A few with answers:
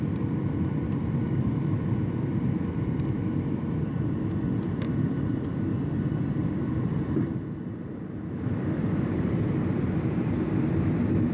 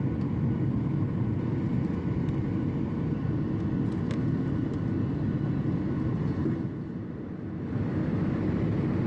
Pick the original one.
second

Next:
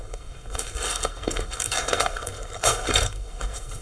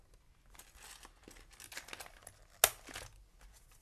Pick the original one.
second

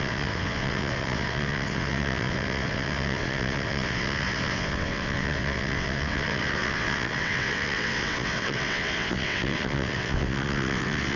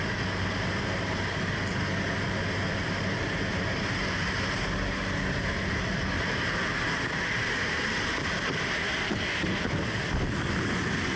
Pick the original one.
second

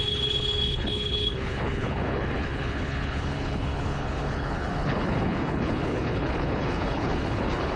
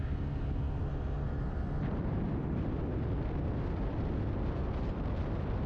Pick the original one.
second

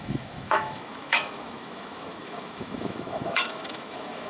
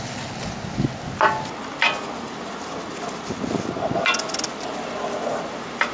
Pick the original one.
second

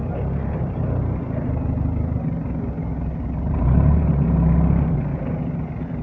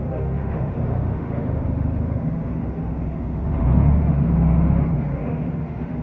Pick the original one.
first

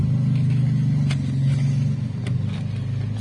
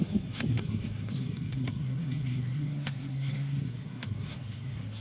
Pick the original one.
first